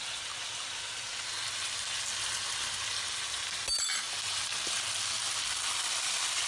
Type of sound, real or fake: real